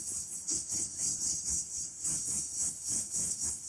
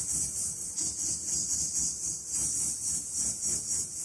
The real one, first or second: second